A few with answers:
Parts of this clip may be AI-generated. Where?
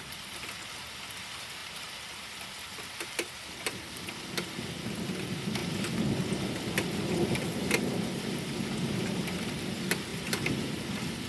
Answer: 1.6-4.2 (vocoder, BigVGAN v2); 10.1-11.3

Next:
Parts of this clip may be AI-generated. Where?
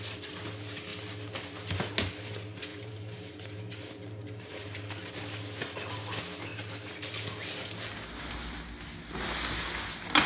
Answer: 2.7-5.1 (vocoder, BigVGAN v2); 6.5-8.1